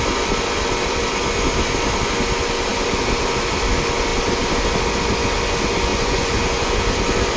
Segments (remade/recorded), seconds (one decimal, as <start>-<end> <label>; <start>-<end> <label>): 0.0-5.9 recorded; 5.9-6.7 remade; 6.7-7.4 recorded